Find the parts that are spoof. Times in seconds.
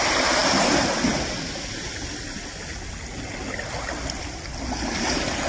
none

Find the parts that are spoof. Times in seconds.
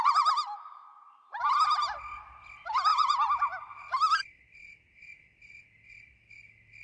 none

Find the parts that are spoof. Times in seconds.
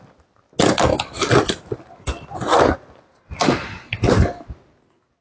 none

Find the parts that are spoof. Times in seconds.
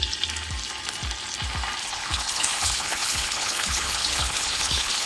1.8-5.1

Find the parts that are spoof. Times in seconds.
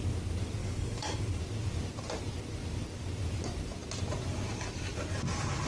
0.6-1.4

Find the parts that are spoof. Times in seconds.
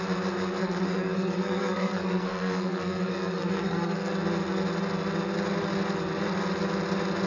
0.6-4.1